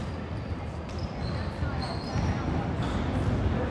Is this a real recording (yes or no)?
yes